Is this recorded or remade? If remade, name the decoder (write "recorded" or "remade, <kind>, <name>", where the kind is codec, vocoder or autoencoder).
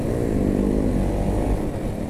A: recorded